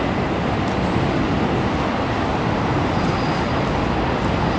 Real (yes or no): yes